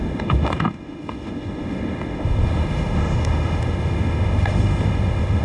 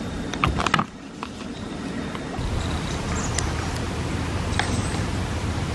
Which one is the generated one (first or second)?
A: first